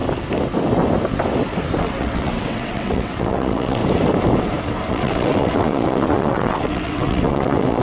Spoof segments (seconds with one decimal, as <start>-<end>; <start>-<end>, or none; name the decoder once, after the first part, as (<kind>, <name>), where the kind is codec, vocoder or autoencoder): 1.8-3.8 (vocoder, WaveNeXt); 4.9-7.8